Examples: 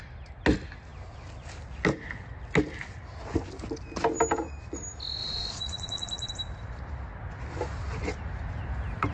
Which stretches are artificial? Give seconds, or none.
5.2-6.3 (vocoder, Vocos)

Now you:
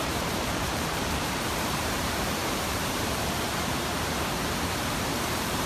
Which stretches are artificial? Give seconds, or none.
0.0-5.7 (vocoder, BigVGAN v2)

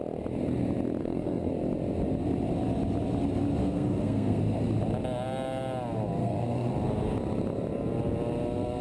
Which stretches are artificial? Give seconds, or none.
1.0-1.5 (codec, SNAC); 3.6-4.4; 6.2-6.7

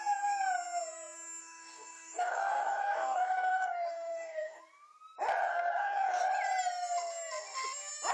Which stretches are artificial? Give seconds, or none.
1.4-4.6 (codec, DAC); 5.5-6.2

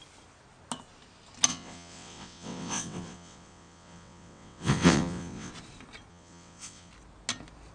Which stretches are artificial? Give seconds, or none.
1.5-5.5 (vocoder, WaveNeXt); 6.1-6.9

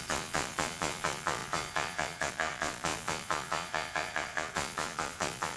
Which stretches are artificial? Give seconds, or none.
0.0-5.6 (vocoder, Vocos)

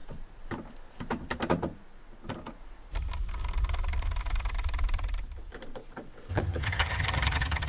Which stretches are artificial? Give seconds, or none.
6.3-7.7 (vocoder, HiFi-GAN)